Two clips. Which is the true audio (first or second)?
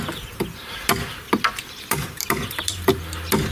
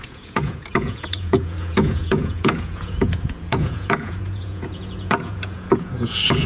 first